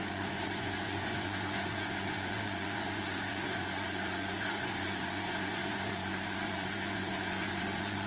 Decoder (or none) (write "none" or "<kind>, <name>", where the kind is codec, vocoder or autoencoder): vocoder, Vocos